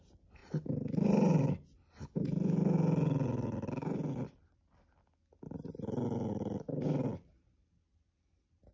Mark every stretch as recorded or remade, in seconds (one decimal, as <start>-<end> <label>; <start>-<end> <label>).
0.0-8.7 recorded